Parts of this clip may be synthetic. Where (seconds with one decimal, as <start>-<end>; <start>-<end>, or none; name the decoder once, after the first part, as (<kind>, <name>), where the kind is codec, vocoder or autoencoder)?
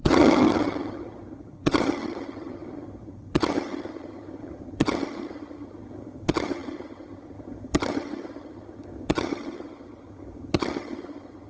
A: 0.0-11.5 (vocoder, HiFi-GAN)